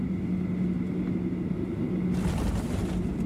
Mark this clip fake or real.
real